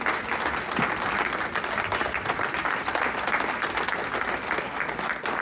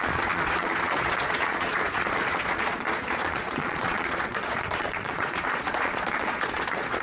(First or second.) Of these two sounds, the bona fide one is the first